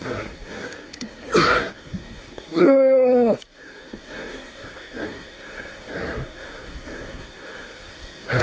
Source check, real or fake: fake